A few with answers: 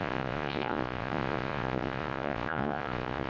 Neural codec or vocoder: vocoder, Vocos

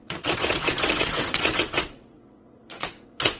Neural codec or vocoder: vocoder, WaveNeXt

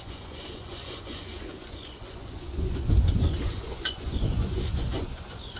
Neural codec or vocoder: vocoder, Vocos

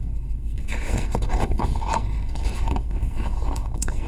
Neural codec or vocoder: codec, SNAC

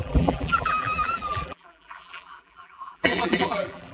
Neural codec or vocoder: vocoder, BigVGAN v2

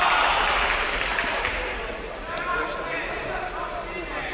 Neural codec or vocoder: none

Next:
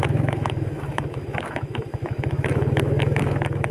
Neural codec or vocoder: autoencoder, DAC-VAE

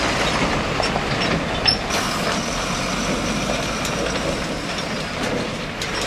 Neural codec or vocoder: none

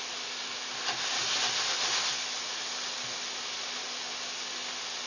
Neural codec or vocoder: none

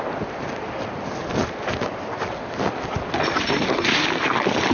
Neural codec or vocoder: none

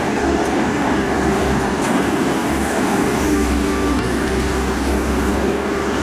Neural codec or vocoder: codec, DAC